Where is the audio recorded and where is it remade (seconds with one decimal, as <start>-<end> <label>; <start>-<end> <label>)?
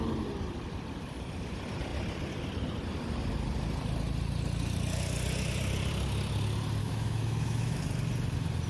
0.0-6.8 recorded; 6.8-7.8 remade; 7.8-8.7 recorded